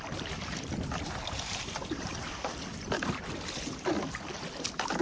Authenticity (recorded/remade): remade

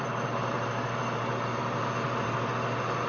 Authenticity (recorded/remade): remade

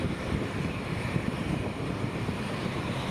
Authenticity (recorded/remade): remade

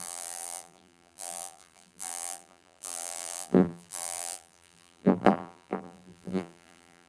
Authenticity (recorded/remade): remade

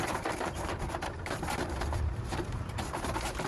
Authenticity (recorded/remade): remade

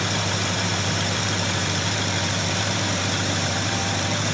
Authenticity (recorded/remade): remade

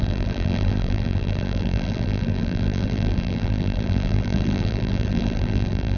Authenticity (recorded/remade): remade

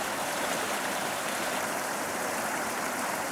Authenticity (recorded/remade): remade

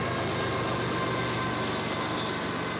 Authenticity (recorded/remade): recorded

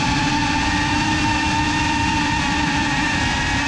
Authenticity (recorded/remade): remade